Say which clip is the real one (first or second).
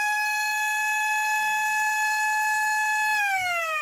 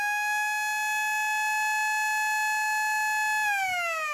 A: second